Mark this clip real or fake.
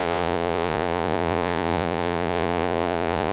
fake